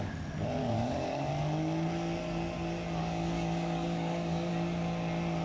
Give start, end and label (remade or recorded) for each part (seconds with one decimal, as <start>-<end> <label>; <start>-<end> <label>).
0.0-0.6 recorded; 0.6-1.3 remade; 1.3-3.0 recorded; 3.0-4.5 remade; 4.5-5.4 recorded